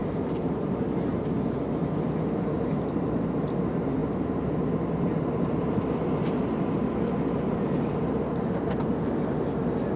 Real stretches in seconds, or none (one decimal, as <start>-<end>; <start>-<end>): 0.6-10.0